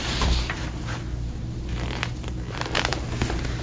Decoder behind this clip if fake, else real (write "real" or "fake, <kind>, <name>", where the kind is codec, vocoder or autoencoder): fake, vocoder, BigVGAN v2